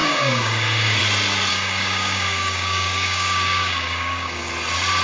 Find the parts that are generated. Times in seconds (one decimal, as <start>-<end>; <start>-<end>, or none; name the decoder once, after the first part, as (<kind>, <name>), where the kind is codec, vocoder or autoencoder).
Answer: 0.0-1.0 (codec, DAC); 1.5-4.5